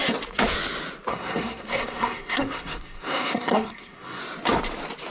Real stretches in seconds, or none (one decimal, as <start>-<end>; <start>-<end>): 0.0-1.1; 4.2-5.1